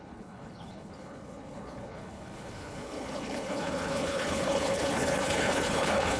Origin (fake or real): fake